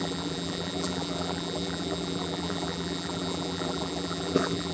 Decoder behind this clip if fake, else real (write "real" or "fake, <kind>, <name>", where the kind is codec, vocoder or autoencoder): fake, vocoder, BigVGAN v2